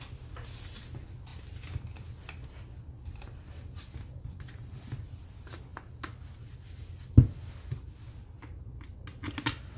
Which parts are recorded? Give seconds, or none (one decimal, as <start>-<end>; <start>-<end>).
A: 0.0-9.8